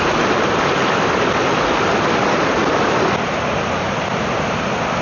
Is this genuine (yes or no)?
yes